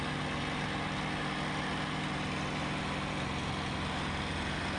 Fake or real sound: real